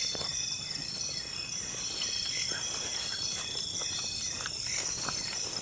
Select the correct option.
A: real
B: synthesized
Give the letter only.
A